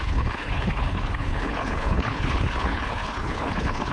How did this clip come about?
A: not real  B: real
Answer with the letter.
A